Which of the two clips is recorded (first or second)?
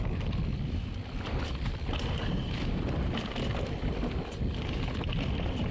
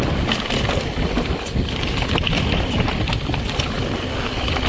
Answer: first